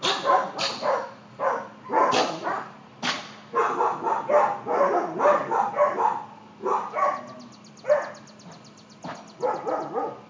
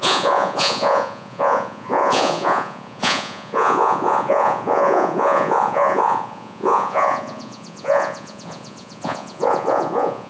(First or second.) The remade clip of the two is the second